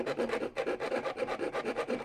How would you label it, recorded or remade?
remade